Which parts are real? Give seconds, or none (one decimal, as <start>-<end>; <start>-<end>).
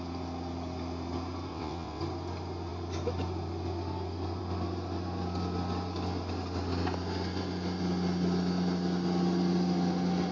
0.0-1.5; 2.0-10.3